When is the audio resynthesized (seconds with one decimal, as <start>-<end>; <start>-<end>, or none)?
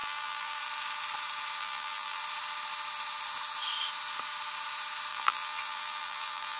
0.0-0.6; 1.6-2.2; 5.1-6.6